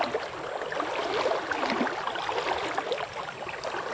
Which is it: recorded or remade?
recorded